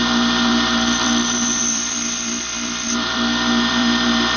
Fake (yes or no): yes